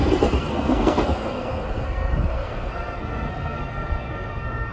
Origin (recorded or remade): remade